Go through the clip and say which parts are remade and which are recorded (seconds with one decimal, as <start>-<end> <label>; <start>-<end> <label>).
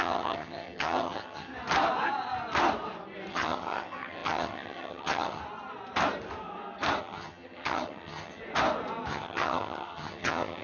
0.0-1.5 remade; 1.5-3.3 recorded; 3.3-5.4 remade; 5.4-7.0 recorded; 7.0-8.4 remade; 8.4-9.1 recorded; 9.1-10.6 remade